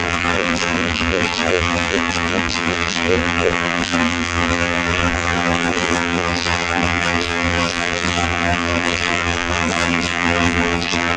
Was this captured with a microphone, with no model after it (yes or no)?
no